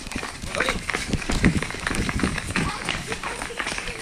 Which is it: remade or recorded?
remade